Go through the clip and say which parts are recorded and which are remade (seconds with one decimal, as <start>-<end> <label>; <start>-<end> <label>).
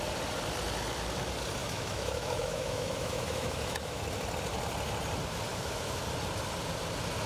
0.0-1.6 recorded; 1.6-4.0 remade; 4.0-5.5 recorded; 5.5-6.0 remade; 6.0-7.3 recorded